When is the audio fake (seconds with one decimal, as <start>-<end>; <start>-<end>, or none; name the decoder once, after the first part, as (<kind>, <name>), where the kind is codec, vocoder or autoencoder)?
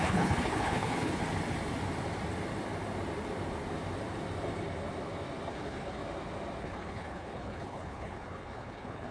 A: 0.0-1.2 (codec, HILCodec); 5.5-6.0; 6.6-9.1